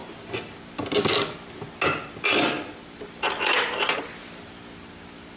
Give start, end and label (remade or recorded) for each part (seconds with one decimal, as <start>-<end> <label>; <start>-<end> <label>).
0.0-5.4 recorded